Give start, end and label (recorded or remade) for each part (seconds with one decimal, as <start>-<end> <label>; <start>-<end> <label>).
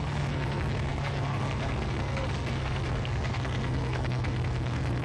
0.0-5.0 remade